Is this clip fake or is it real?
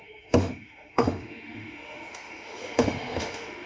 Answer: fake